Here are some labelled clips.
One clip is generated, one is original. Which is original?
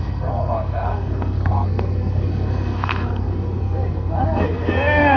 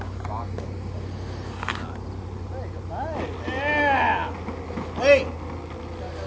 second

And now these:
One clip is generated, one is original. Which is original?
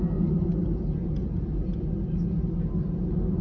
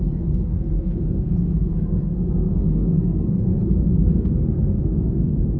first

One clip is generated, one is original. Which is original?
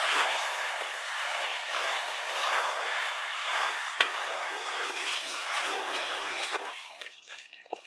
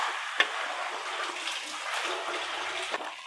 second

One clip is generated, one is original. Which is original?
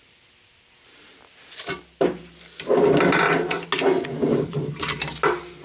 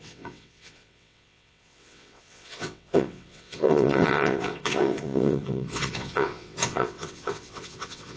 first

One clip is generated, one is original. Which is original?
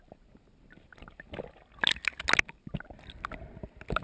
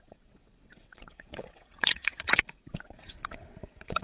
first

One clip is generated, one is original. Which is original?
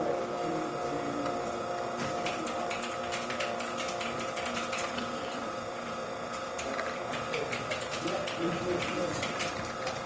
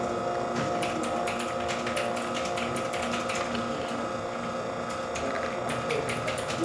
second